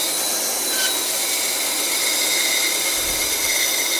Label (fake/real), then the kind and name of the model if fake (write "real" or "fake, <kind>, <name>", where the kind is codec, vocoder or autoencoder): real